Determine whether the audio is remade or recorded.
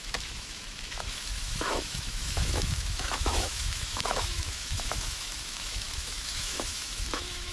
remade